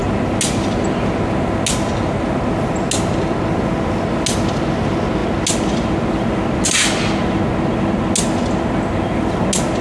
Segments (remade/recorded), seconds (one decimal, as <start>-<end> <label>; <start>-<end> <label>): 0.0-9.8 recorded